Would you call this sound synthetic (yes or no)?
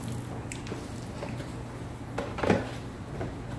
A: no